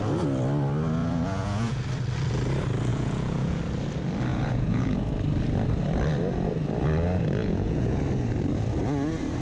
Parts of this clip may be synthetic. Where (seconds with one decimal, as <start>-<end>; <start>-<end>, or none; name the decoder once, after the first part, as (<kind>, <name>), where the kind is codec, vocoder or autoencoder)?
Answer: 1.0-1.8 (vocoder, Vocos); 2.9-3.6; 4.3-5.1; 7.4-8.0